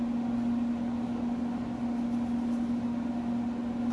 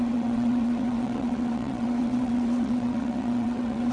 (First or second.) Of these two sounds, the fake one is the second